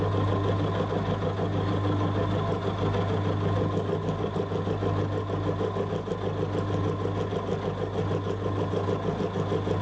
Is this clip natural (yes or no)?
yes